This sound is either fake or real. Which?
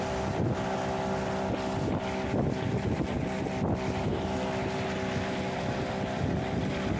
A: real